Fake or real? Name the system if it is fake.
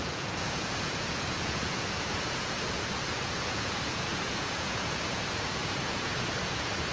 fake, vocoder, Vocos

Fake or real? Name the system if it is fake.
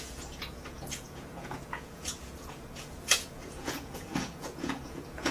fake, vocoder, Vocos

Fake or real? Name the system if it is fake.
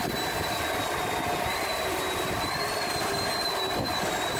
real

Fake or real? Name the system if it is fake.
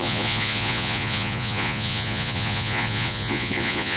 fake, vocoder, Vocos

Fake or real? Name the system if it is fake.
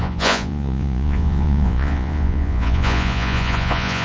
fake, vocoder, Vocos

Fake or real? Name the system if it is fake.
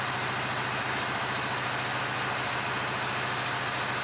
real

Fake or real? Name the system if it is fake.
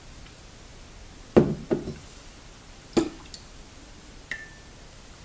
real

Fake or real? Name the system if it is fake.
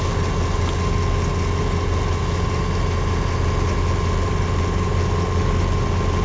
real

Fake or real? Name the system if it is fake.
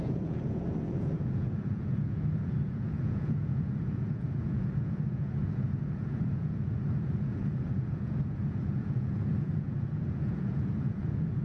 fake, vocoder, Vocos